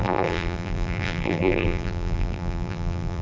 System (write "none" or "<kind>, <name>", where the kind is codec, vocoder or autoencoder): vocoder, BigVGAN v2